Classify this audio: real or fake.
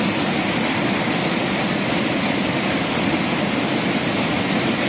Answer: real